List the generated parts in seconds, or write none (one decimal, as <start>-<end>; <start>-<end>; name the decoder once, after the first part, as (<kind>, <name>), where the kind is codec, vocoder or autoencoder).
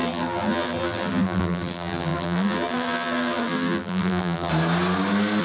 0.0-4.5 (vocoder, BigVGAN v2)